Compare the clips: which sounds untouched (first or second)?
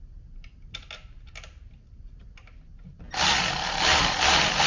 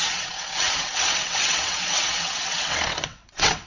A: first